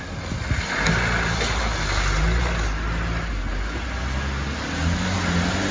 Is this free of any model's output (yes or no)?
yes